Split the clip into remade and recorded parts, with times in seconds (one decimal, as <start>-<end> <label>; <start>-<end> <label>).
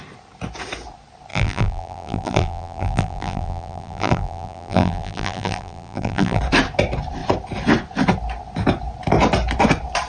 0.0-1.3 recorded; 1.3-6.4 remade; 6.4-10.1 recorded